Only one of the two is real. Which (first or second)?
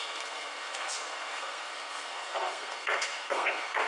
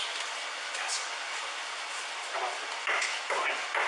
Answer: second